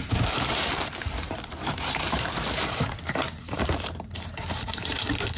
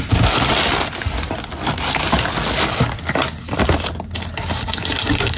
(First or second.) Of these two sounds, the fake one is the first